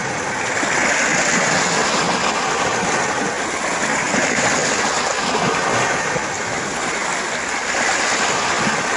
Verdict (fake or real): real